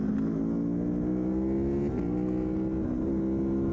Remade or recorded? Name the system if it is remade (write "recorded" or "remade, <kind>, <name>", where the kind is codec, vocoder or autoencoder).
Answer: recorded